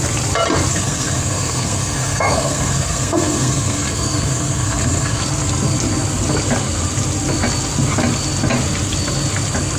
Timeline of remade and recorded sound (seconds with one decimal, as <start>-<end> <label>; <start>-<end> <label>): 0.0-0.7 recorded; 0.7-5.2 remade; 5.2-9.8 recorded